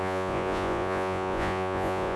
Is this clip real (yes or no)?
no